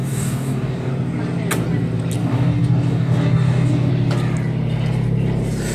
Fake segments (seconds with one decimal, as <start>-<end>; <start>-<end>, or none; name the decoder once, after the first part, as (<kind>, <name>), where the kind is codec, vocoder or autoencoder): 0.0-0.9 (codec, DAC); 2.2-3.9